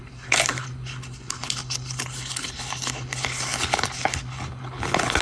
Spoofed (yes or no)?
yes